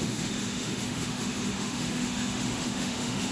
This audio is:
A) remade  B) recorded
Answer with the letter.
A